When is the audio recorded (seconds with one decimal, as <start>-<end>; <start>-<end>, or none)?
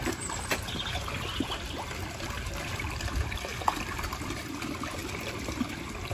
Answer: 3.5-4.0